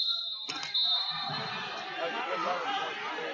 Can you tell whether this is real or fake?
real